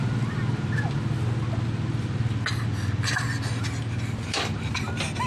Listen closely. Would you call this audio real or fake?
real